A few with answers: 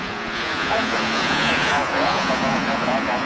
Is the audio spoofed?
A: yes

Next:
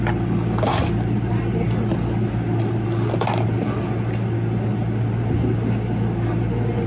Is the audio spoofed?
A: no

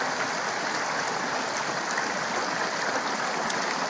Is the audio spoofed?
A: no